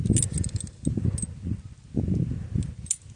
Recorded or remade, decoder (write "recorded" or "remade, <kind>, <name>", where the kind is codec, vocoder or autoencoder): recorded